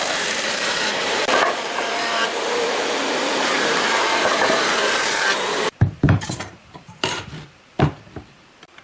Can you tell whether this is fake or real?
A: fake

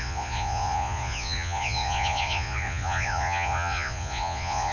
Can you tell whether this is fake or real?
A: fake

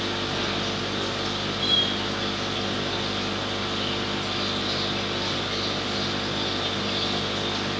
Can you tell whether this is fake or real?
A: real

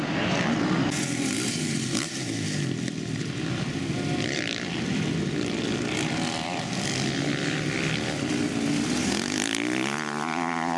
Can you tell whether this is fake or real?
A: real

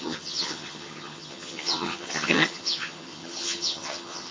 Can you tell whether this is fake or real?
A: fake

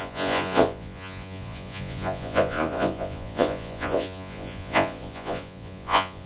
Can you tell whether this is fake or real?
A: fake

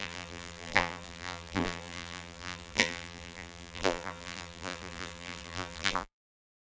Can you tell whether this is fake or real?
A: fake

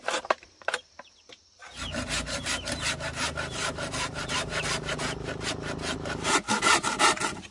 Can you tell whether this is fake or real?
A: fake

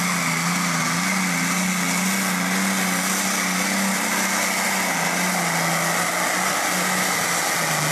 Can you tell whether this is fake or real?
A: real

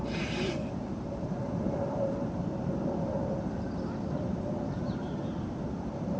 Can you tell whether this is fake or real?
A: fake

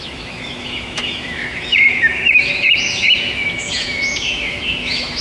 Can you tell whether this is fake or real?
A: fake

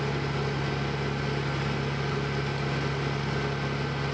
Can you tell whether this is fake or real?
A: real